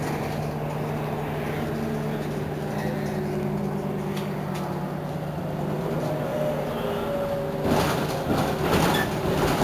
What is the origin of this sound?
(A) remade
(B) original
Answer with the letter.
B